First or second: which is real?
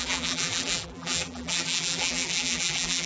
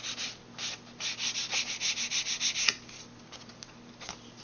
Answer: second